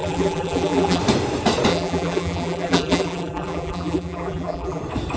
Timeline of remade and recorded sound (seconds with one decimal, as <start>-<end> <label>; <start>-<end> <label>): 0.0-1.0 remade; 1.0-1.7 recorded; 1.7-4.8 remade; 4.8-5.2 recorded